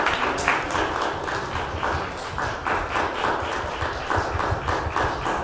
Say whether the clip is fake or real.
real